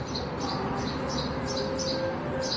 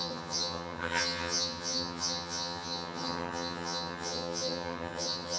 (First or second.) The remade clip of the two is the second